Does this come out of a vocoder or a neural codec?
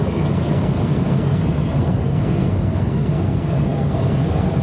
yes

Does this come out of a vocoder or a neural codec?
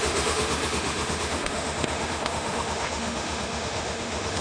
yes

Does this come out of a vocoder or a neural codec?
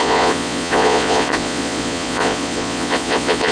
yes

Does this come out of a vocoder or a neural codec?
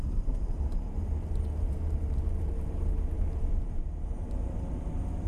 yes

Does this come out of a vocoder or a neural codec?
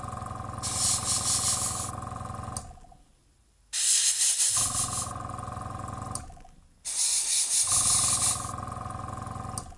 no